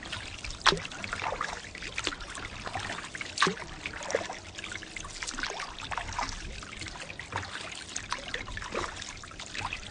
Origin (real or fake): real